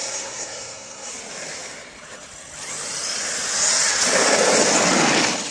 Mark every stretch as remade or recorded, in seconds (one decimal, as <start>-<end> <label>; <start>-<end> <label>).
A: 0.0-1.1 remade; 1.1-5.5 recorded